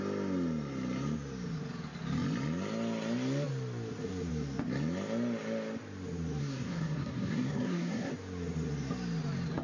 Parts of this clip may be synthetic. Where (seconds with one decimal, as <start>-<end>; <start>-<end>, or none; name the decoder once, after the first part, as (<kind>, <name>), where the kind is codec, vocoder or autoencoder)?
6.4-8.1 (codec, SNAC)